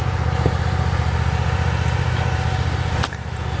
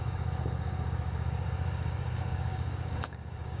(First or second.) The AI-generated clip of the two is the second